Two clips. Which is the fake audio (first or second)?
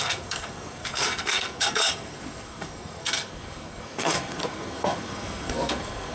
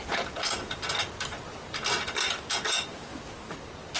first